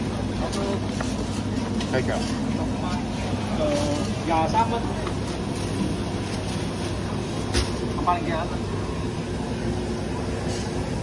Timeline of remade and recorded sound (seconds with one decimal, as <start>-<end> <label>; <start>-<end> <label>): 0.0-11.0 recorded